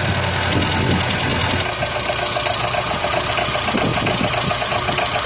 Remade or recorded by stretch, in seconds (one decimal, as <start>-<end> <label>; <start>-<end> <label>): 0.0-5.3 recorded